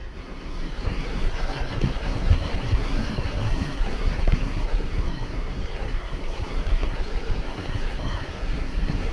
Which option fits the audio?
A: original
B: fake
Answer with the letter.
B